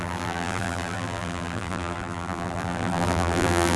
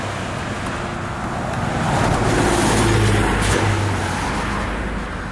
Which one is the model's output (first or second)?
first